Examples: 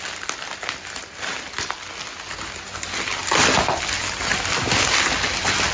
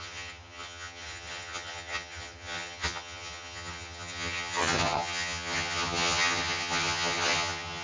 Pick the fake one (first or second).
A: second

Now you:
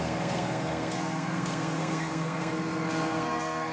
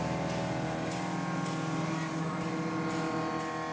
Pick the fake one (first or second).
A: first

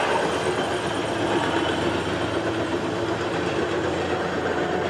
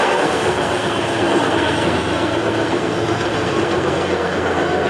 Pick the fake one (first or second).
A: second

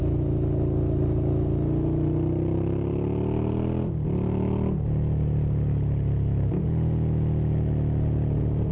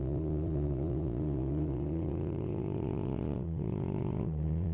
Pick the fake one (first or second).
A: second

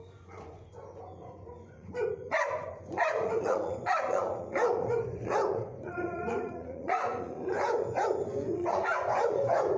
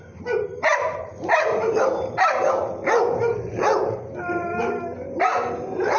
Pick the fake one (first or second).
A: first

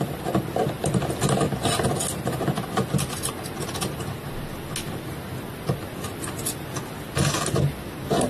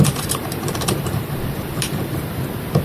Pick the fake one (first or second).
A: second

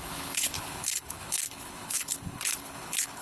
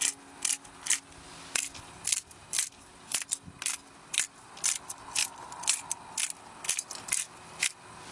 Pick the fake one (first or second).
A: first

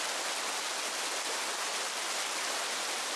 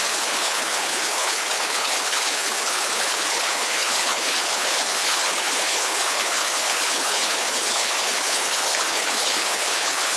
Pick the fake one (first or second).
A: second